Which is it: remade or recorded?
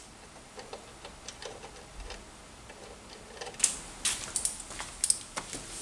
recorded